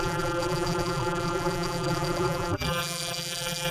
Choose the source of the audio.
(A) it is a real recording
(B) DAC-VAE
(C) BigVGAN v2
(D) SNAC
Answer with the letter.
C